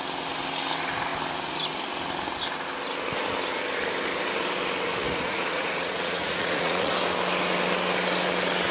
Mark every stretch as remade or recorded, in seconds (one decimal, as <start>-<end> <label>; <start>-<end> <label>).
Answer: 0.0-5.0 recorded; 5.0-6.9 remade; 6.9-8.7 recorded